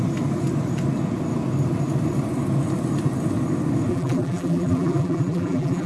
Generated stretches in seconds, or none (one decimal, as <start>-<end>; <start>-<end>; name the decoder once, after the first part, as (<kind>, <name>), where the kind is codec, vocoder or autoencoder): 3.9-5.9 (vocoder, BigVGAN v2)